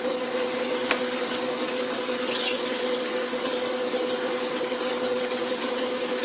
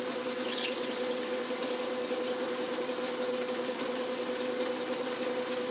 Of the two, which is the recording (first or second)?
second